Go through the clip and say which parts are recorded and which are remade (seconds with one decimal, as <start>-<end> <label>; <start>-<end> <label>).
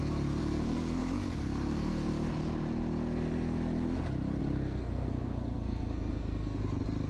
0.0-0.4 recorded; 0.4-1.0 remade; 1.0-1.4 recorded; 1.4-2.1 remade; 2.1-4.4 recorded; 4.4-6.6 remade; 6.6-7.1 recorded